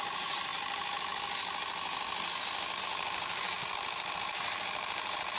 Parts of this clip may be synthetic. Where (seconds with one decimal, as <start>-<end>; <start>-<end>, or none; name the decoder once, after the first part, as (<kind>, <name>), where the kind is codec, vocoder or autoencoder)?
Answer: 0.0-0.5 (vocoder, BigVGAN v2); 2.8-3.6; 4.1-5.4

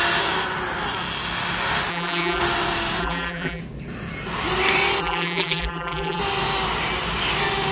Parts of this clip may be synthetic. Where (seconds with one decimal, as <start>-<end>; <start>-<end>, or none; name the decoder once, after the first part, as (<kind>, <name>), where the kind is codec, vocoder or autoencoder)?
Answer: 1.9-2.4 (vocoder, BigVGAN v2); 3.0-3.6; 5.0-6.2

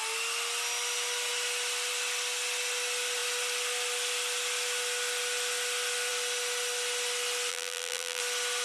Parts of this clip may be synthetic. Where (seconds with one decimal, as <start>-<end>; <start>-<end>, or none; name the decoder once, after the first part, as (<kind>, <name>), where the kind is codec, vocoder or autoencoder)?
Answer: 7.5-8.2 (vocoder, BigVGAN v2)

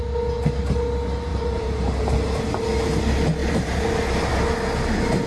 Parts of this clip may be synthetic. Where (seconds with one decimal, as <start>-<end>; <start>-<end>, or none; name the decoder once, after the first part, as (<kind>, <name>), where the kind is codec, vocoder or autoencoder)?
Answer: 1.3-2.1 (vocoder, BigVGAN v2); 3.4-4.3

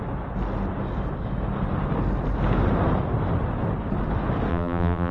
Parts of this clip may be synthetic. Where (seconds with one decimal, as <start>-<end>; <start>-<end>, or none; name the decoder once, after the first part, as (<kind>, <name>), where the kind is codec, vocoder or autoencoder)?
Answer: 4.5-5.1 (vocoder, BigVGAN v2)